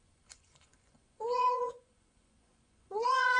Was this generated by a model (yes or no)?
yes